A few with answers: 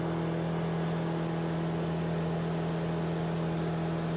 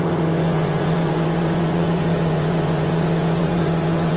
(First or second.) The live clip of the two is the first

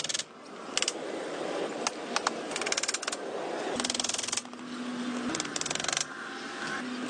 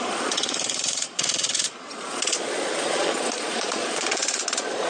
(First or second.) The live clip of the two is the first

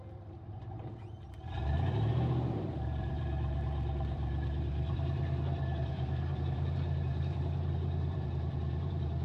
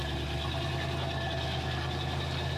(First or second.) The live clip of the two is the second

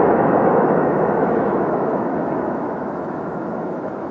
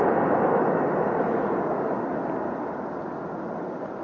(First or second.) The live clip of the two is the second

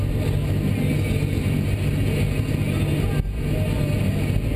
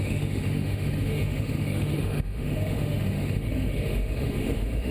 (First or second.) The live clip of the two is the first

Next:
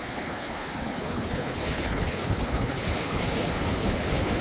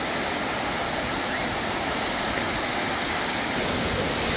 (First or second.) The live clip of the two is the second